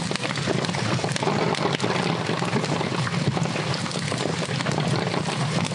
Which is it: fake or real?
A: real